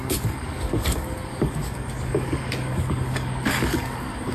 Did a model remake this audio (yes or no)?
yes